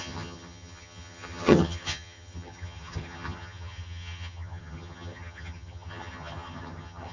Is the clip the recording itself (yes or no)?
no